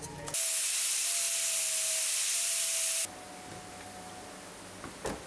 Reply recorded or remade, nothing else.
recorded